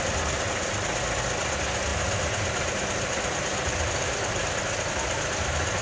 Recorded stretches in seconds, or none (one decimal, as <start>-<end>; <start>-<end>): 0.0-1.9; 4.9-5.8